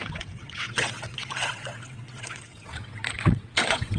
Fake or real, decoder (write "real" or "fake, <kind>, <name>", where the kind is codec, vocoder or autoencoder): fake, vocoder, WaveNeXt